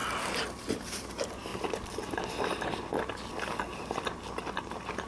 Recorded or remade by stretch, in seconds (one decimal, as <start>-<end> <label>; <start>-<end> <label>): 0.0-0.7 recorded; 0.7-1.5 remade; 1.5-4.6 recorded; 4.6-5.1 remade